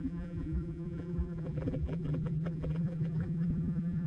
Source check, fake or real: fake